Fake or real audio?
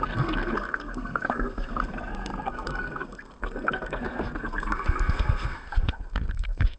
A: fake